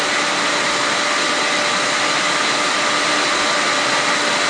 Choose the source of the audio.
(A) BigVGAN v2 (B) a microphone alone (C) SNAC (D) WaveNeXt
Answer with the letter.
B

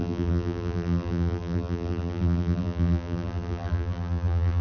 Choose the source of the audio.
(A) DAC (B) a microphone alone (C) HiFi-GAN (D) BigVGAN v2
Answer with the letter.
D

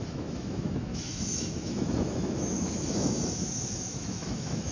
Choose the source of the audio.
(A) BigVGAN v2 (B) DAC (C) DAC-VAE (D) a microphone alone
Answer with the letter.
C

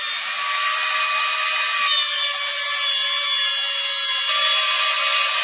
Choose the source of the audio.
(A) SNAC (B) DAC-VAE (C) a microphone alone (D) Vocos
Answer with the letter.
C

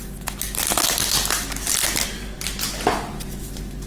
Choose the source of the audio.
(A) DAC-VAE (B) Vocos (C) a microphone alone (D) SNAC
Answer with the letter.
C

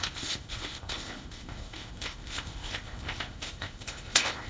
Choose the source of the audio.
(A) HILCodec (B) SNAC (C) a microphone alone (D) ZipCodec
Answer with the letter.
D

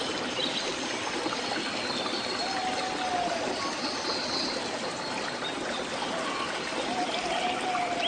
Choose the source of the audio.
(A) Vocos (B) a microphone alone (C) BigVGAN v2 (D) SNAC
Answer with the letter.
B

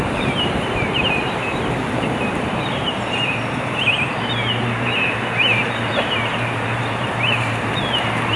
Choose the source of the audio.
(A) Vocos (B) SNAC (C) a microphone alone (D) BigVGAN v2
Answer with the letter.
D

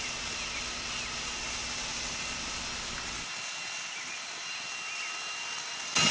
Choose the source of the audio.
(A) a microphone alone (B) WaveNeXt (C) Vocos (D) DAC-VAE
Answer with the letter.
A